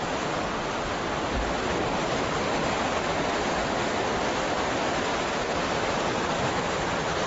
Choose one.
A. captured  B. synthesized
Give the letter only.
A